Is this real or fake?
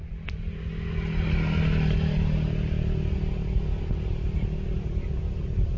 real